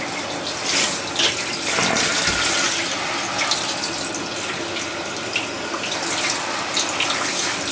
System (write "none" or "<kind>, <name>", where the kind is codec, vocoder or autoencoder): none